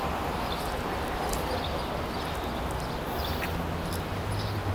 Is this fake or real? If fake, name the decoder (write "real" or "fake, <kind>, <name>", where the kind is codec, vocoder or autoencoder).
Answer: real